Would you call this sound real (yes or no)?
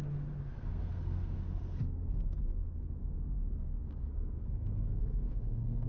no